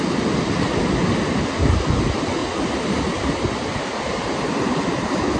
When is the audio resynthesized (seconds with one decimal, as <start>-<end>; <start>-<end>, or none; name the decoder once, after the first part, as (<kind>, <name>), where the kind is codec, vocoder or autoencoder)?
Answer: none